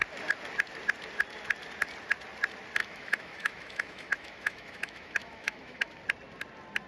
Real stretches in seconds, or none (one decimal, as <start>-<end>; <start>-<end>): 0.0-2.8; 6.0-6.9